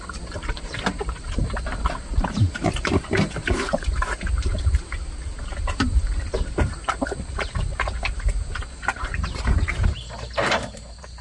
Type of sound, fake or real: fake